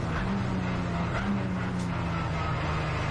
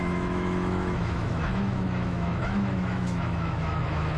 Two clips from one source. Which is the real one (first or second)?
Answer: first